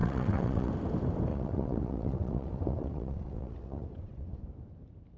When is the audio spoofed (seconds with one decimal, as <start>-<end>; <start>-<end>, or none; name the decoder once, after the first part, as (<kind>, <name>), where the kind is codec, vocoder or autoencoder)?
0.0-0.7 (vocoder, WaveNeXt); 1.3-4.4